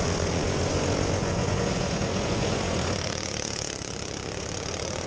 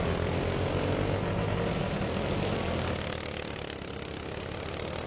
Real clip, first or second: second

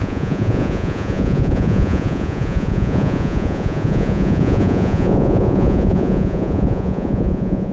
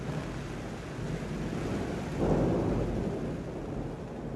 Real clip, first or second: second